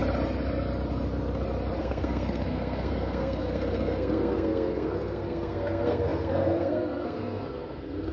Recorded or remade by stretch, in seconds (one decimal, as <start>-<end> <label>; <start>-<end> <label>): 0.0-1.8 recorded; 1.8-8.1 remade

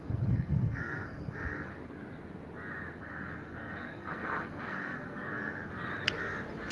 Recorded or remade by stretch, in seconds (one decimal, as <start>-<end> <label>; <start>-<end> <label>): 0.0-1.7 remade; 1.7-3.0 recorded; 3.0-5.7 remade; 5.7-6.7 recorded

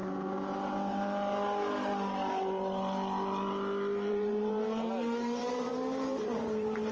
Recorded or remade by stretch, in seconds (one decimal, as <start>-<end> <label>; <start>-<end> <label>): 0.0-4.1 recorded; 4.1-6.9 remade

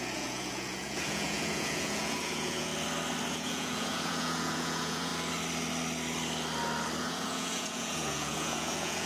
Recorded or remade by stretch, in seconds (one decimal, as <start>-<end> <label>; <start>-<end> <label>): 0.0-2.7 remade; 2.7-3.3 recorded; 3.3-5.1 remade; 5.1-7.0 recorded; 7.0-9.1 remade

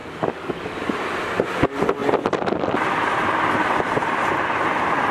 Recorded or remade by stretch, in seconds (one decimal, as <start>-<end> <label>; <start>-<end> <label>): 0.0-0.9 remade; 0.9-5.1 recorded

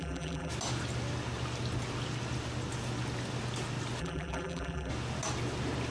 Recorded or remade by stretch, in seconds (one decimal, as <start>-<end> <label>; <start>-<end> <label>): 0.0-0.5 remade; 0.5-4.0 recorded; 4.0-4.9 remade; 4.9-5.9 recorded